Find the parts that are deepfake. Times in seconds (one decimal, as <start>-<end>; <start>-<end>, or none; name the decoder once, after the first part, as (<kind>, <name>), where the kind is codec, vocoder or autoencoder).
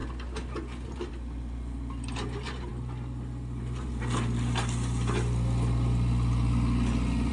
none